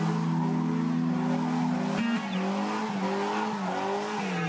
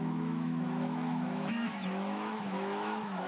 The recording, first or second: first